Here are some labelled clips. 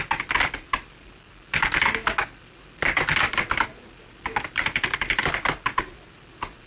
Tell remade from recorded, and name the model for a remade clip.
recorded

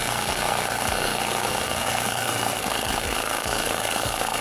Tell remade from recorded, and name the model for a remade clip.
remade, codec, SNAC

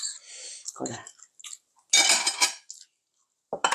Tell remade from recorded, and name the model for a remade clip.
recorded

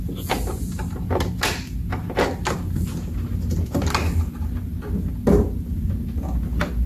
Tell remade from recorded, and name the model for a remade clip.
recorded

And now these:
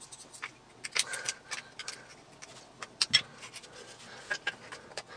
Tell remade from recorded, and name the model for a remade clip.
recorded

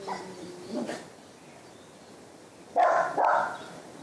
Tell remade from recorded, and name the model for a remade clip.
recorded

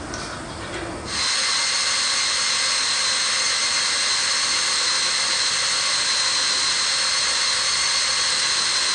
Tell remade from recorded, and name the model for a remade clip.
recorded